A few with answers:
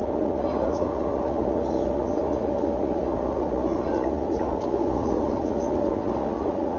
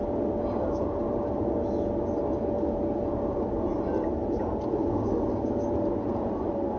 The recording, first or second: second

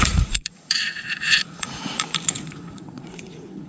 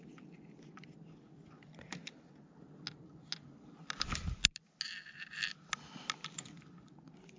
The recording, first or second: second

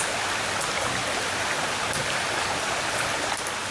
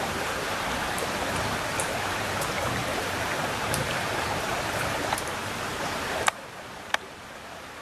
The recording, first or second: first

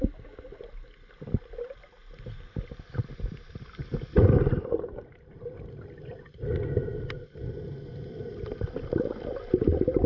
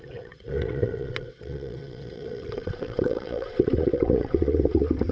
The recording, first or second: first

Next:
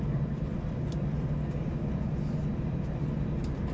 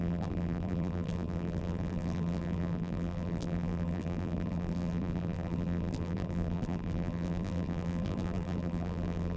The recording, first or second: first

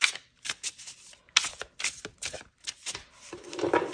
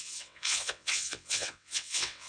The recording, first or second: first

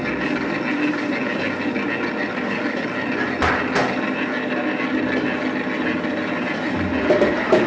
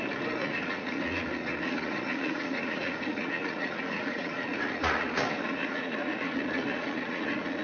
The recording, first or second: first